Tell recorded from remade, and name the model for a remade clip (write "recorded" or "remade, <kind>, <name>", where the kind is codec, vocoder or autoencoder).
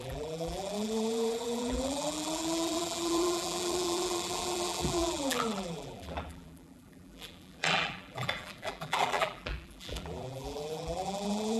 remade, vocoder, BigVGAN v2